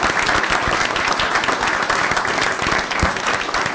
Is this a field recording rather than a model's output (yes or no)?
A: yes